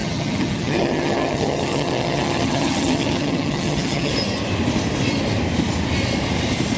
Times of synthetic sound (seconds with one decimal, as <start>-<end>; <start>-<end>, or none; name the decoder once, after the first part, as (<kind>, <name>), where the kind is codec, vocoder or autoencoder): 0.0-4.1 (vocoder, HiFi-GAN)